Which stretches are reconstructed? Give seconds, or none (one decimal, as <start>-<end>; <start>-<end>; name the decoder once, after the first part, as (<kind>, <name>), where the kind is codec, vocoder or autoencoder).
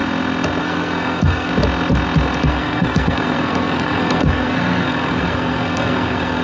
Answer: 0.6-1.5 (codec, SNAC); 2.4-6.4